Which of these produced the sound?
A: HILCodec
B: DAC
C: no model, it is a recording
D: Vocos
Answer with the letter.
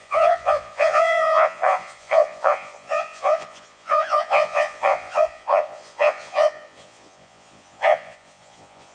D